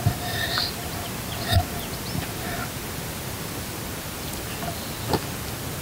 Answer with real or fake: real